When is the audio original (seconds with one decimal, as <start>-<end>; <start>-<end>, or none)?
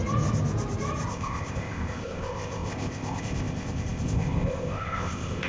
0.0-1.1